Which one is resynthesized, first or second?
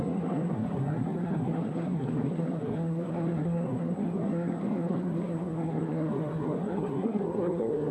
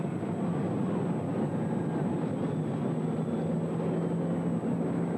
first